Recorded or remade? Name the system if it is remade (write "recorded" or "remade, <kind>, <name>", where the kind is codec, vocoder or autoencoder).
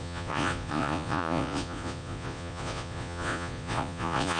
remade, vocoder, Vocos